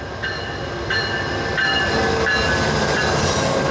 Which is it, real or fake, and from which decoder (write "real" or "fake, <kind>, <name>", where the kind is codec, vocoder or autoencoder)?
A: real